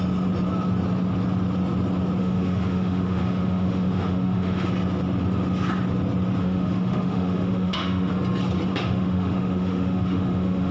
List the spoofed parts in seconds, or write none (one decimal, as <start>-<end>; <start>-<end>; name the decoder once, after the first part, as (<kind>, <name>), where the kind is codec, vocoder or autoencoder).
2.2-4.7 (autoencoder, DAC-VAE); 6.4-8.1; 8.7-10.7